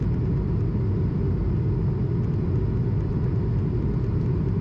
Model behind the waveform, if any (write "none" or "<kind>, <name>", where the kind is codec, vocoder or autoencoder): none